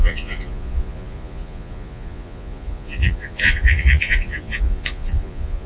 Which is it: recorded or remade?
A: remade